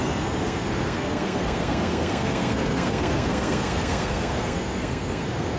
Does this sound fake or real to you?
fake